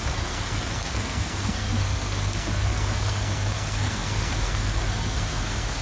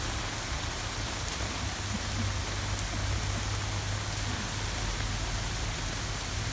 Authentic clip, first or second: second